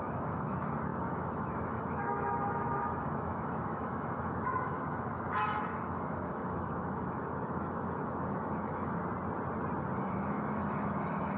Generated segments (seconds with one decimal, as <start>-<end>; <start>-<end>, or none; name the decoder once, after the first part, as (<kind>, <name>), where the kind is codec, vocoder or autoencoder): 0.0-9.0 (autoencoder, DAC-VAE); 10.0-11.4